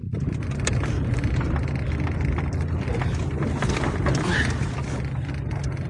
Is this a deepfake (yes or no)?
no